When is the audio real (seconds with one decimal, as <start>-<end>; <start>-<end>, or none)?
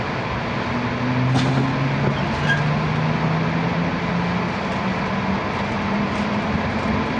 0.0-7.2